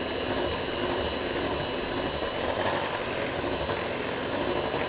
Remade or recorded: recorded